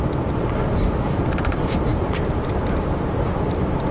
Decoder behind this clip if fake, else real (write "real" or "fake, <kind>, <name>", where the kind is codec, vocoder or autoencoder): real